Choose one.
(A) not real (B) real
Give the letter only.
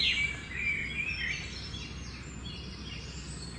B